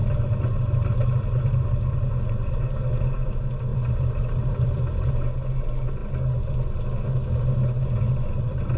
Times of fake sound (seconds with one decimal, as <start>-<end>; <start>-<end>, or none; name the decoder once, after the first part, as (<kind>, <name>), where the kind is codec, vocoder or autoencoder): 0.0-0.9 (vocoder, BigVGAN v2); 3.7-5.1